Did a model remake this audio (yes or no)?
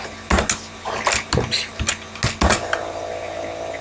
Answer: no